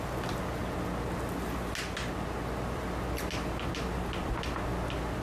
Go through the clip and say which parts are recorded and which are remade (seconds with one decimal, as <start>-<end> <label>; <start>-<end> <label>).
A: 0.0-5.2 recorded